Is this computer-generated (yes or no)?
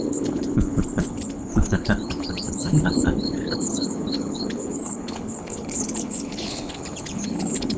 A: yes